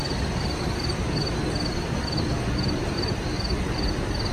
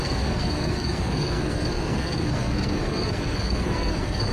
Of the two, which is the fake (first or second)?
second